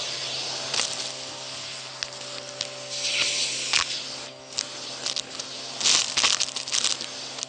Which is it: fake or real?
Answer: real